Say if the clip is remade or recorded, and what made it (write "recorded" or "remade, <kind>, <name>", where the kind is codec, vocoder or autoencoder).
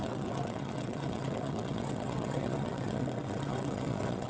remade, vocoder, WaveNeXt